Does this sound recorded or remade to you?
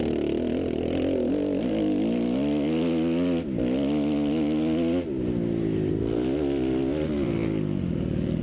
recorded